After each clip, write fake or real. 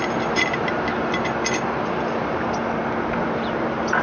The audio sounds real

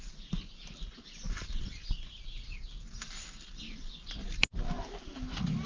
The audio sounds real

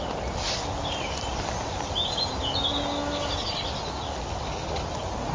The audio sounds real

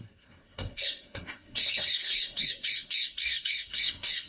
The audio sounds fake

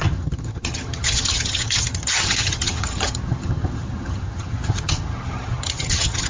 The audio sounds fake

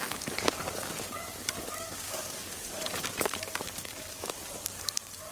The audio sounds fake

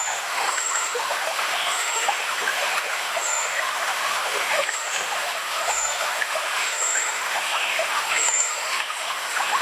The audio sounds fake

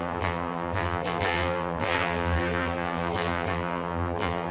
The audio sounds fake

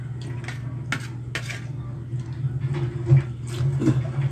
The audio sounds real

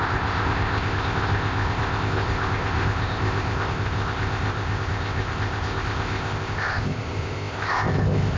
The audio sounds fake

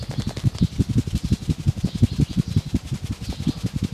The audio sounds real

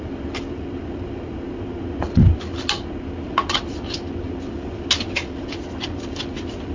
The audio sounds real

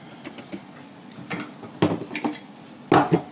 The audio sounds real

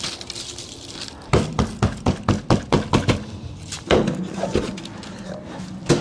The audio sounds fake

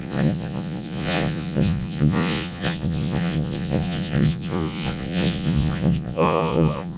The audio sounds fake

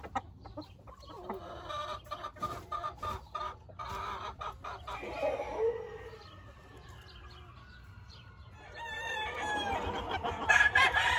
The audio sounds real